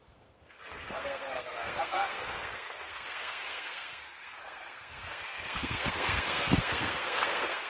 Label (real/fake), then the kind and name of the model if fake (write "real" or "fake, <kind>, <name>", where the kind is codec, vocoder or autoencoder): fake, codec, SNAC